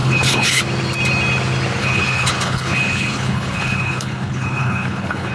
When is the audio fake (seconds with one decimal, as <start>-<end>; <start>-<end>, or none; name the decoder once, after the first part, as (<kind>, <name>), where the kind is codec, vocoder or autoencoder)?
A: 0.0-0.6 (codec, HILCodec); 1.8-5.3